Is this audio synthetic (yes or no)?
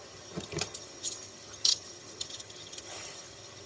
yes